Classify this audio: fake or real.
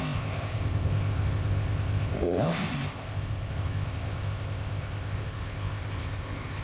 fake